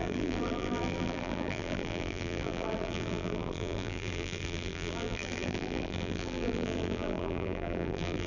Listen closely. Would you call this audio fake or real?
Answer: fake